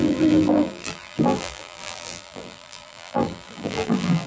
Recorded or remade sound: remade